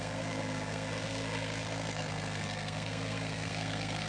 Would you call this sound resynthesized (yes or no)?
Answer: yes